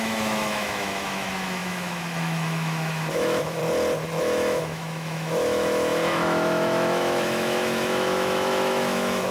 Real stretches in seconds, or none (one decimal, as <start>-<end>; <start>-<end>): 3.6-4.2